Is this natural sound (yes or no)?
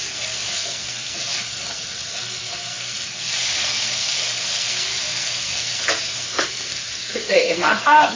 no